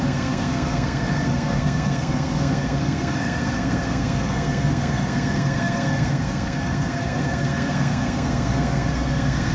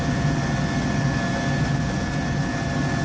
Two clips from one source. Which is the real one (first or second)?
second